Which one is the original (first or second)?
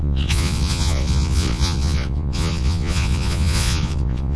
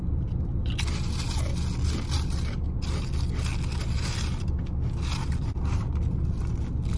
second